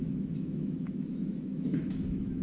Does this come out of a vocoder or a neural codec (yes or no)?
yes